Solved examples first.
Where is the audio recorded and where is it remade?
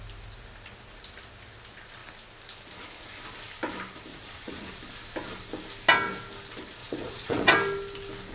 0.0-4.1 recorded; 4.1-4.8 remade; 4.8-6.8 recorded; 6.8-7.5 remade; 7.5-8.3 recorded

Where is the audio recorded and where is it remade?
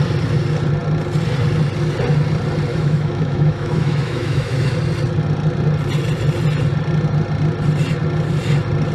0.0-2.7 recorded; 2.7-4.7 remade; 4.7-8.9 recorded